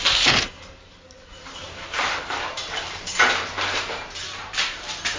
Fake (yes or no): yes